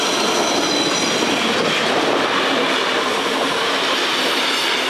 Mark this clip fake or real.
real